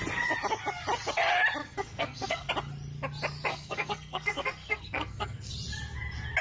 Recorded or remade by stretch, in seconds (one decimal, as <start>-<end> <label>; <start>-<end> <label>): 0.0-1.6 recorded; 1.6-2.5 remade; 2.5-3.5 recorded; 3.5-5.5 remade; 5.5-6.4 recorded